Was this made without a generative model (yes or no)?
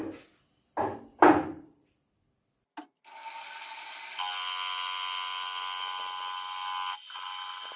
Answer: yes